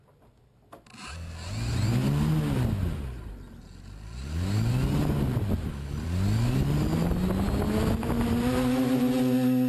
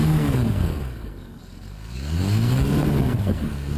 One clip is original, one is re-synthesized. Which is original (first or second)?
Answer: first